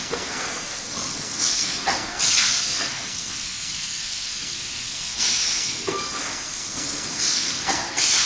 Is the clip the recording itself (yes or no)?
no